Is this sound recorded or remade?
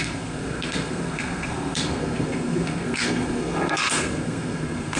remade